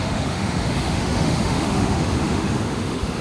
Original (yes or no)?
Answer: no